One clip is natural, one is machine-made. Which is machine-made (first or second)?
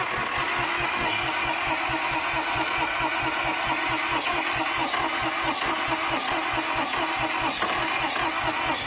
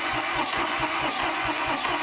second